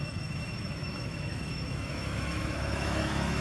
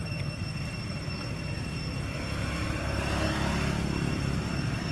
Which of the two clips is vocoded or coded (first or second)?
first